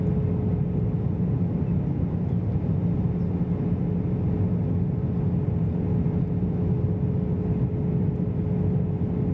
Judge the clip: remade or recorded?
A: recorded